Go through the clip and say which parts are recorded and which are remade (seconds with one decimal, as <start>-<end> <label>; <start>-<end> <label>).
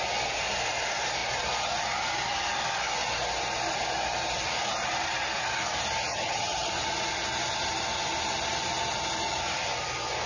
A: 0.0-6.1 recorded; 6.1-6.7 remade; 6.7-10.3 recorded